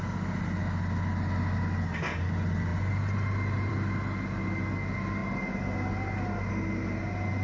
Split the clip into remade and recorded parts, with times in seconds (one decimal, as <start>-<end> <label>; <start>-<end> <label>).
0.0-7.4 recorded